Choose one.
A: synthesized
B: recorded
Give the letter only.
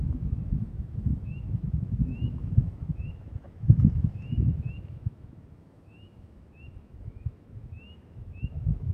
A